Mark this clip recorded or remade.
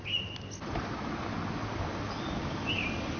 recorded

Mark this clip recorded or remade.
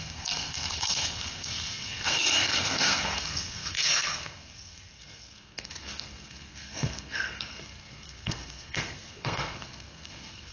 remade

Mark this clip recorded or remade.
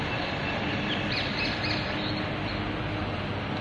recorded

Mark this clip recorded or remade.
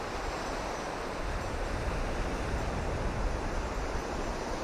recorded